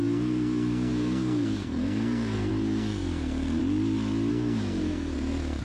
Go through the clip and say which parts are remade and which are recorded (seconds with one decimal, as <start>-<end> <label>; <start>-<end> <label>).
0.0-3.6 remade; 3.6-4.3 recorded; 4.3-5.6 remade